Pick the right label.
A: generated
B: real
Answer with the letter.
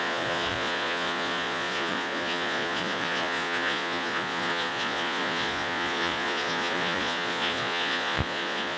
A